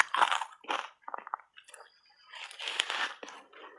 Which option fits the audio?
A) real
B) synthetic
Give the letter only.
A